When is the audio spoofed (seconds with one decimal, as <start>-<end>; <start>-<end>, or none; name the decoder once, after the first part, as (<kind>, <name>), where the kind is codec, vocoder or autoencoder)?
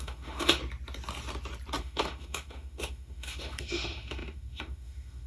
0.0-0.6 (autoencoder, DAC-VAE); 1.8-5.3